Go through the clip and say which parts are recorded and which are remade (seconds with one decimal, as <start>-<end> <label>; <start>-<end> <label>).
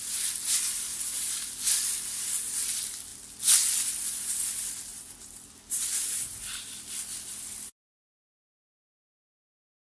0.0-4.9 recorded; 4.9-6.4 remade; 6.4-9.9 recorded